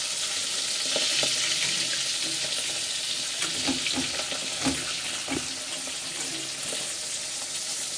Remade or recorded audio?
recorded